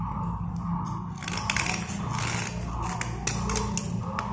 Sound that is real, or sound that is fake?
real